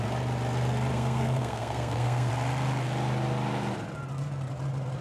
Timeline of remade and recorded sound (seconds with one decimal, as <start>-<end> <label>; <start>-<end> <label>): 0.0-0.9 recorded; 0.9-2.3 remade; 2.3-5.0 recorded